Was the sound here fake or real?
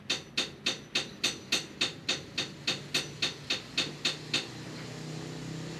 real